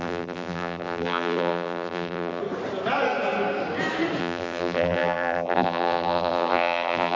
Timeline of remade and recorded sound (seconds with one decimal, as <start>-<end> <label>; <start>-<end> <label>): 0.0-2.4 remade; 2.4-4.2 recorded; 4.2-7.2 remade